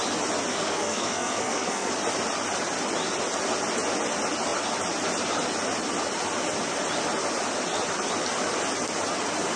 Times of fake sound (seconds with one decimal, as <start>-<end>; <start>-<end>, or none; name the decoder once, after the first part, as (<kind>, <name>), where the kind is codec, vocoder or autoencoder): 0.5-1.9 (codec, SNAC)